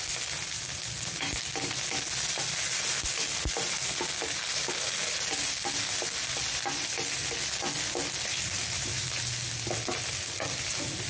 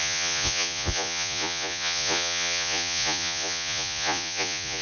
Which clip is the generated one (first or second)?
second